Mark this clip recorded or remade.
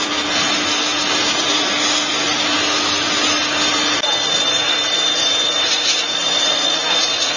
recorded